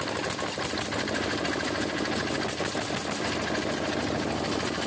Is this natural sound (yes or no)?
yes